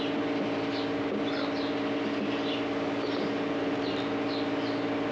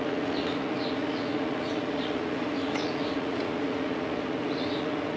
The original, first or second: first